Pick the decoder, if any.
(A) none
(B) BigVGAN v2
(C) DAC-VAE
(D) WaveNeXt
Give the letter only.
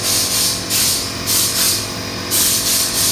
A